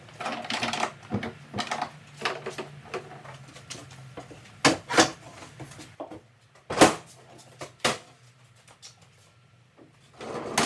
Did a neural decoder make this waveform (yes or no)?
no